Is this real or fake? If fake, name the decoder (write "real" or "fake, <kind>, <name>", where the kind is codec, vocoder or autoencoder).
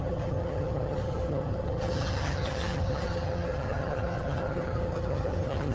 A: fake, vocoder, HiFi-GAN